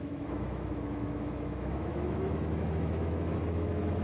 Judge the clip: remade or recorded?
remade